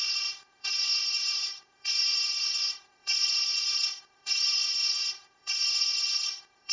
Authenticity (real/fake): fake